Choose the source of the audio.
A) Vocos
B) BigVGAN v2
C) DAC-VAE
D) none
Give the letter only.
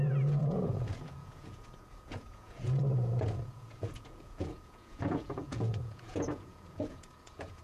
A